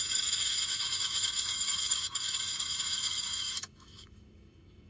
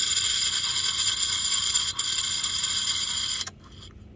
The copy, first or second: first